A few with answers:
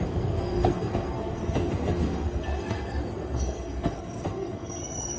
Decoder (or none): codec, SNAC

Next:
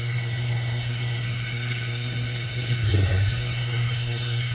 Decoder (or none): codec, SNAC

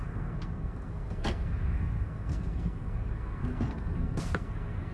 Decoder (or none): codec, SNAC